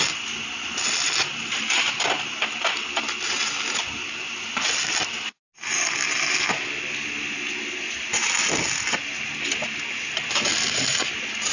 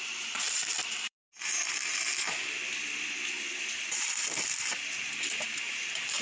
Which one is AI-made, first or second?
second